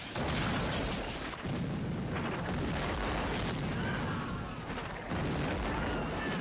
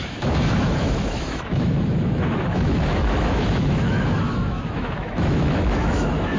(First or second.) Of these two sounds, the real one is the first